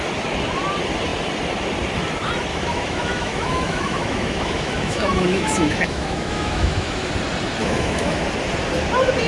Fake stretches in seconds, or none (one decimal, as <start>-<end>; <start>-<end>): 2.5-7.1; 7.6-8.2